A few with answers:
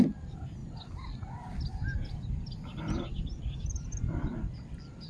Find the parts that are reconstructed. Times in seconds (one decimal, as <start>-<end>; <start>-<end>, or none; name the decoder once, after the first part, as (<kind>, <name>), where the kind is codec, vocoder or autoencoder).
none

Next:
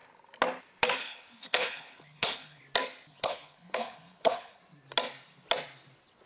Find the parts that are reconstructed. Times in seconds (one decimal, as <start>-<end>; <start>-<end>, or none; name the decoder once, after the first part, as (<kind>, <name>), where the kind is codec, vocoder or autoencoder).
1.0-2.6 (codec, HILCodec); 3.1-4.6

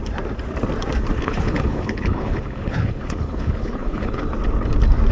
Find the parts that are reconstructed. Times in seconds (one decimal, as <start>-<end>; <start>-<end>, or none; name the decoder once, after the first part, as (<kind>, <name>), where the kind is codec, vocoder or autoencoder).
1.1-4.2 (codec, HILCodec)

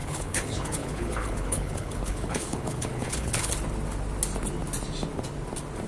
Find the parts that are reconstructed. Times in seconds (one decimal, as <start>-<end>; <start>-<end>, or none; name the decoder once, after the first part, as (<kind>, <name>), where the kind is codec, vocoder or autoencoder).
0.0-3.5 (codec, HILCodec)

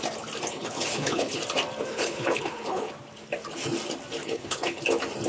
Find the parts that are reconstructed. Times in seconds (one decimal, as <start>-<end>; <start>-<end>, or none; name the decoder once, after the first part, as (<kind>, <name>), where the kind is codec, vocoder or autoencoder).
0.5-1.4 (codec, HILCodec); 1.9-2.9; 4.2-4.8

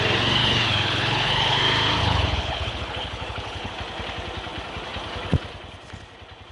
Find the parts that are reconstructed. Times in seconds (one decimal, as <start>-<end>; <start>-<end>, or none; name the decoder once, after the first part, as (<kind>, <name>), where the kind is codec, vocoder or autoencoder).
0.4-1.6 (codec, HILCodec); 2.0-3.7

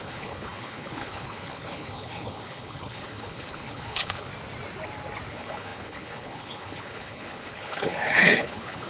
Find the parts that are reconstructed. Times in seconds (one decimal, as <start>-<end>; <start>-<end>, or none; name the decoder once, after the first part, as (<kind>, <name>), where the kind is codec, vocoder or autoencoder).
0.0-4.3 (codec, HILCodec); 5.3-8.9

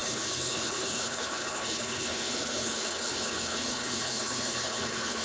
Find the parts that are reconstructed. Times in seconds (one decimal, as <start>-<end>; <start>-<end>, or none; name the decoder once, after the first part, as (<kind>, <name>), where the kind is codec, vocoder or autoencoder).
0.0-5.2 (codec, HILCodec)